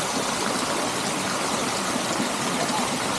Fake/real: real